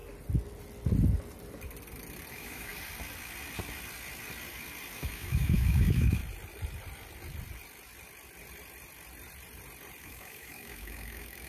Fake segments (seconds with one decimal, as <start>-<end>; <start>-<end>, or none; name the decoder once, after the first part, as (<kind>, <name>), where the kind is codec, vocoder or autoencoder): 2.3-2.7 (autoencoder, DAC-VAE); 5.0-6.2; 10.0-11.5